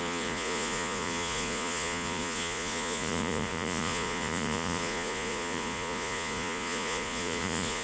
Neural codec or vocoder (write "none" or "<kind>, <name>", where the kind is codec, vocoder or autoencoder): vocoder, Vocos